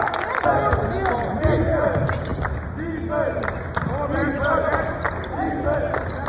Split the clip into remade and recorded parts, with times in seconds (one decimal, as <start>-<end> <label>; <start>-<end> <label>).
0.0-6.3 recorded